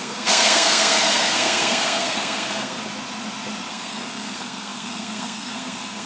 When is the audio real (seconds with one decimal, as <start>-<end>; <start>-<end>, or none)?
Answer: 2.8-3.7

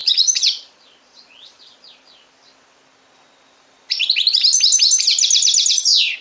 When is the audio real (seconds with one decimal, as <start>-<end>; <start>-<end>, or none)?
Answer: 2.0-5.7

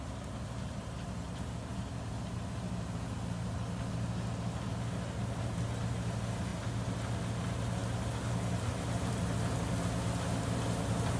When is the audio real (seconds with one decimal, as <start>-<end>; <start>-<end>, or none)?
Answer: 0.0-11.2

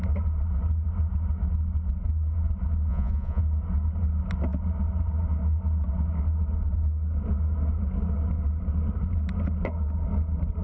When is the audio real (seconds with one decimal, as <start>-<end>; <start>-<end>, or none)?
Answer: 0.0-2.9; 3.4-10.6

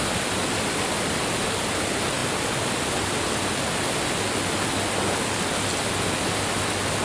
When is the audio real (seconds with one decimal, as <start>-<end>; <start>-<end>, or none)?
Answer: 0.0-7.0

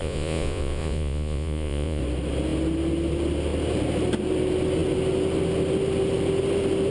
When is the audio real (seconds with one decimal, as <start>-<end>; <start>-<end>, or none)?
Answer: 2.0-6.9